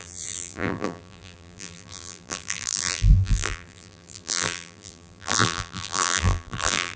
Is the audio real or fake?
fake